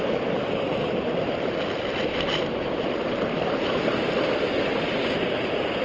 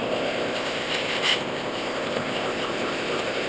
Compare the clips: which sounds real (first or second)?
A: first